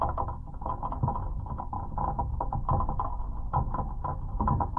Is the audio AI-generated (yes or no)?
no